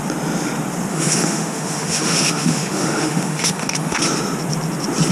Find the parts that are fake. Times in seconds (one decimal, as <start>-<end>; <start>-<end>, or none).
0.9-4.0